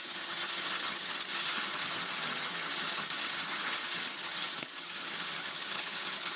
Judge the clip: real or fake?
fake